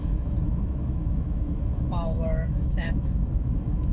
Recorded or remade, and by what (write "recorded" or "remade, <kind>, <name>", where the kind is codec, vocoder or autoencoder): remade, autoencoder, DAC-VAE